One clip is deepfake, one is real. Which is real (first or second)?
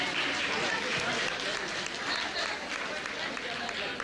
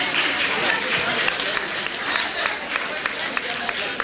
first